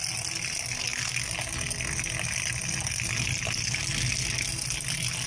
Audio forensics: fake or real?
real